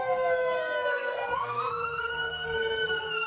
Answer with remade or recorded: remade